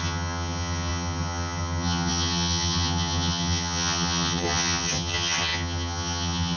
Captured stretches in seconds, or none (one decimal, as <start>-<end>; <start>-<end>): none